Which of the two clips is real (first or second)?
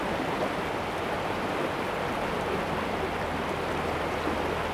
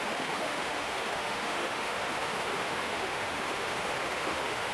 first